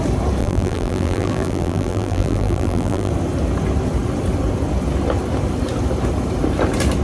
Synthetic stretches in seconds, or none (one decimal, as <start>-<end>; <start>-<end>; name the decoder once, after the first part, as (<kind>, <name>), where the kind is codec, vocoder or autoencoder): 0.4-3.1 (vocoder, BigVGAN v2)

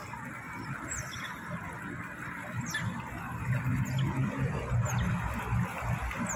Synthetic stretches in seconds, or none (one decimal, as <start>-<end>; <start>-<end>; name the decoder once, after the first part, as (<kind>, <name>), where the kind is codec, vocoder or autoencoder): none

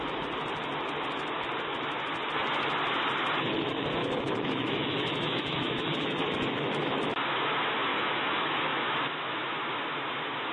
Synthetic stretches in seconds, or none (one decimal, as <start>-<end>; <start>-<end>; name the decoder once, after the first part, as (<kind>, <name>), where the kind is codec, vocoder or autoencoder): 4.0-7.0 (autoencoder, DAC-VAE); 7.9-8.9

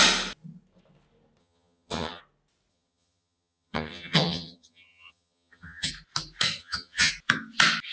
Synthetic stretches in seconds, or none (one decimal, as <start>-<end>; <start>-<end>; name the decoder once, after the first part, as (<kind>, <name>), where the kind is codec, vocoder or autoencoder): 1.4-2.2 (vocoder, HiFi-GAN); 2.7-5.9; 6.6-7.1